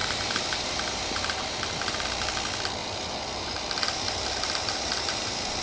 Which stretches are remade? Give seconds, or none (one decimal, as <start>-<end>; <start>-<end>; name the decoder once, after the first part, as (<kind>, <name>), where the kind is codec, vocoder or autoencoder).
0.0-2.0 (vocoder, BigVGAN v2); 2.8-5.6